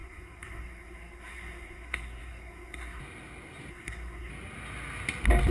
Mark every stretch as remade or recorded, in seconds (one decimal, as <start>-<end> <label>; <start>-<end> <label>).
0.0-3.0 remade; 3.0-3.7 recorded; 3.7-4.3 remade; 4.3-5.5 recorded